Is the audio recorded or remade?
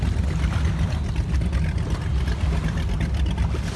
recorded